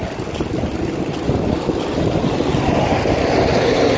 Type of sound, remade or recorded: recorded